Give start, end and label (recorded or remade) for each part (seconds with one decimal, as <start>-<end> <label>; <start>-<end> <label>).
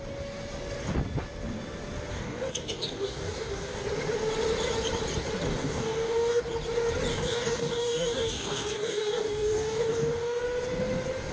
0.0-2.1 recorded; 2.1-3.8 remade; 3.8-5.5 recorded; 5.5-6.4 remade; 6.4-7.1 recorded; 7.1-10.4 remade; 10.4-11.3 recorded